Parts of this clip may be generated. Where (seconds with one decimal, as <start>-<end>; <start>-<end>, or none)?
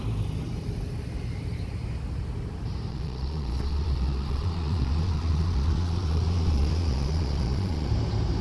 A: 2.9-7.9